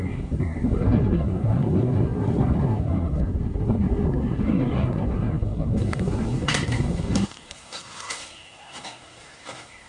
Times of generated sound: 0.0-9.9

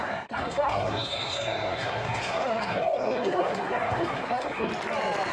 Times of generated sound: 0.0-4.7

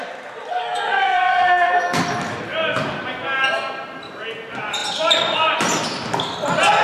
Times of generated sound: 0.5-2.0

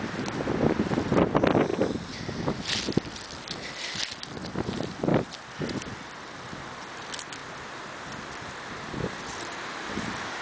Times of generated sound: none

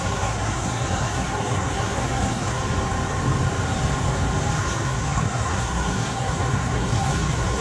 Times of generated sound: 0.0-2.6; 4.6-7.6